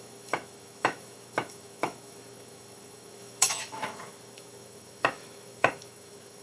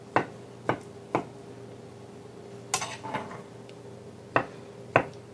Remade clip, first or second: first